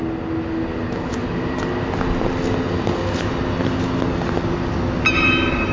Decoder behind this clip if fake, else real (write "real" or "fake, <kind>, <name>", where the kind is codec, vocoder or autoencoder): real